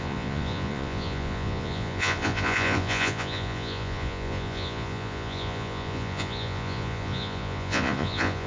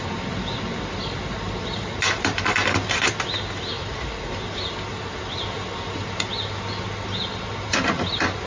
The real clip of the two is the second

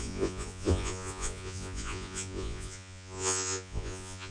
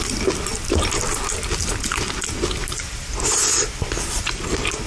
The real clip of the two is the second